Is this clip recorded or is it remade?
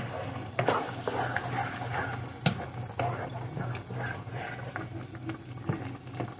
recorded